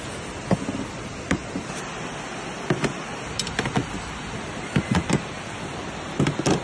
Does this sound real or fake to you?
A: real